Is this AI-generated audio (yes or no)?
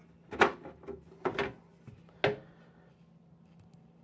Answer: no